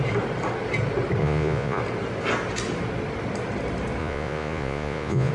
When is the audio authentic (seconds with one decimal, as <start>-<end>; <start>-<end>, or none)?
0.0-1.2; 1.8-4.0